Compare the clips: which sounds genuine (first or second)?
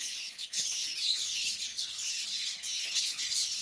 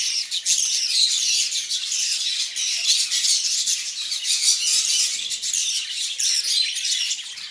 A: second